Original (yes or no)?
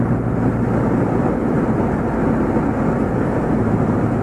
yes